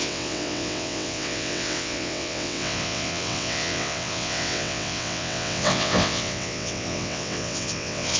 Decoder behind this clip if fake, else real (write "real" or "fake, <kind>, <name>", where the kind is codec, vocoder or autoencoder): fake, vocoder, WaveNeXt